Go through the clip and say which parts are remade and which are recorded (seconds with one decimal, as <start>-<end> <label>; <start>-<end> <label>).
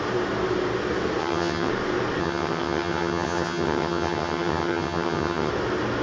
0.0-1.2 recorded; 1.2-1.7 remade; 1.7-2.2 recorded; 2.2-5.5 remade; 5.5-6.0 recorded